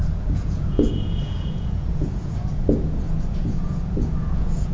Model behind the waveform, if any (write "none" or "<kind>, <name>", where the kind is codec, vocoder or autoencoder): vocoder, Vocos